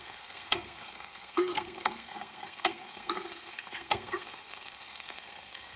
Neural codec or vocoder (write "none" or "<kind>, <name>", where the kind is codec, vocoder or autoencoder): codec, SNAC